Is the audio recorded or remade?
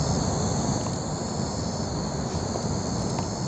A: recorded